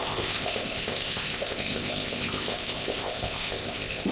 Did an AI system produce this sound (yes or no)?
yes